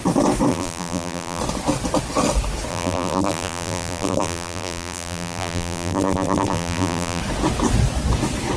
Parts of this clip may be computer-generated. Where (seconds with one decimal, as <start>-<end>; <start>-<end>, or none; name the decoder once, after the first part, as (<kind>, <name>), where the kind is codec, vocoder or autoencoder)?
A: 0.5-1.4 (vocoder, BigVGAN v2); 2.7-7.2